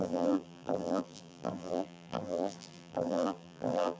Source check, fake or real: fake